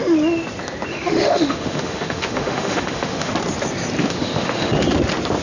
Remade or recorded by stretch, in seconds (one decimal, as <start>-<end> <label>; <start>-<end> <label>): 0.0-0.9 recorded; 0.9-3.3 remade; 3.3-4.0 recorded; 4.0-4.7 remade; 4.7-5.4 recorded